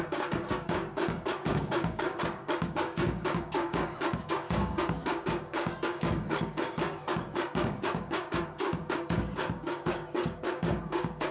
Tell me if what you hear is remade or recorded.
remade